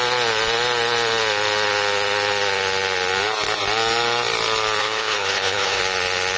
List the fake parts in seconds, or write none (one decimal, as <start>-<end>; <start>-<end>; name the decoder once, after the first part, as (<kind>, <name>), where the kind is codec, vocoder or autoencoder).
4.8-5.8 (codec, HILCodec)